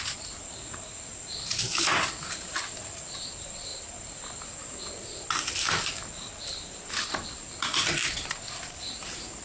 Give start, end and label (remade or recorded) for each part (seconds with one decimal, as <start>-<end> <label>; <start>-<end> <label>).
0.0-9.4 recorded